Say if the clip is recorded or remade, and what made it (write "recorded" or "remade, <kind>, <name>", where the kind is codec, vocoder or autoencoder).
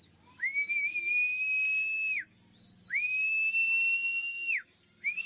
recorded